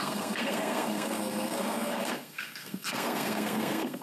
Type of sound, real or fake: fake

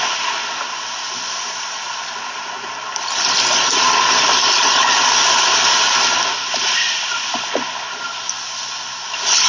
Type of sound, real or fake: real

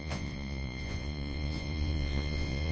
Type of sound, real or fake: fake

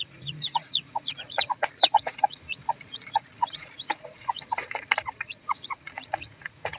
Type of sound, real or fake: fake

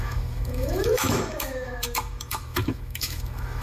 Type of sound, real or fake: fake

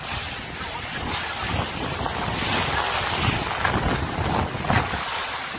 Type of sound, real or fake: real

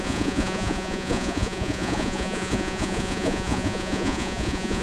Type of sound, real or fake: fake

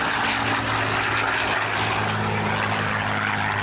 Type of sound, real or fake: real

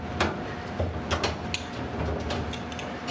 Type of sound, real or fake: real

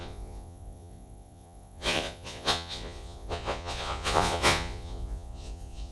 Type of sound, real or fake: fake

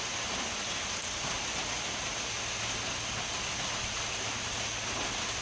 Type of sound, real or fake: real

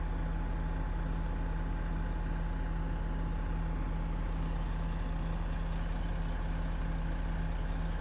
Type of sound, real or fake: real